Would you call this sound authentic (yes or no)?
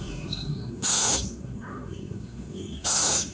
no